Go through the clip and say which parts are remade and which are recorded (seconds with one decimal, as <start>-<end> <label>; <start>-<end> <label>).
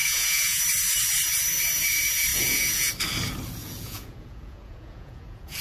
0.0-0.6 remade; 0.6-2.3 recorded; 2.3-2.9 remade; 2.9-3.6 recorded; 3.6-5.6 remade